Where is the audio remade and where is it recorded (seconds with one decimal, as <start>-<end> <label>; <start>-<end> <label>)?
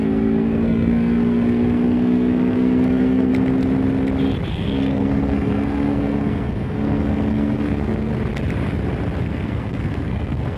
0.0-3.3 remade; 3.3-4.5 recorded; 4.5-8.1 remade; 8.1-9.2 recorded; 9.2-10.6 remade